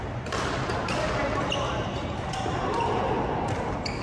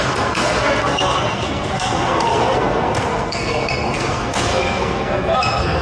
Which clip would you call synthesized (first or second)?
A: second